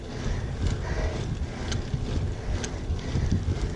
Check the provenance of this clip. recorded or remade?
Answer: recorded